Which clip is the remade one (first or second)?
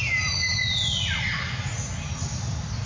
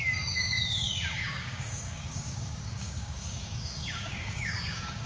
second